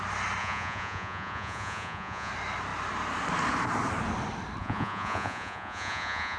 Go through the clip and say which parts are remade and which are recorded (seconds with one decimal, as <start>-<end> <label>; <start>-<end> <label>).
0.0-0.4 recorded; 0.4-2.3 remade; 2.3-4.6 recorded; 4.6-6.4 remade